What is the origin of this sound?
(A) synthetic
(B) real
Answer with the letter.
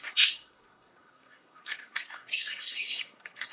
A